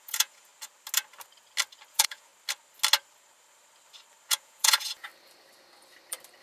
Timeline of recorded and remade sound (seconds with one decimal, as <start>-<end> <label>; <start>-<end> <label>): 0.0-0.5 remade; 0.5-1.9 recorded; 1.9-2.3 remade; 2.3-4.3 recorded; 4.3-5.1 remade; 5.1-6.4 recorded